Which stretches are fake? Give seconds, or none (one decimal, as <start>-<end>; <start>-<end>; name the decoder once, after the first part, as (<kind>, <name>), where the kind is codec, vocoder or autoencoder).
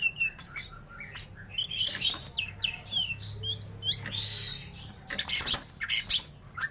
0.0-0.7 (vocoder, BigVGAN v2); 1.9-3.1